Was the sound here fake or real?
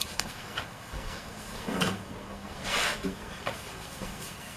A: fake